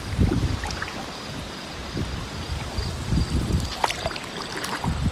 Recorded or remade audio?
recorded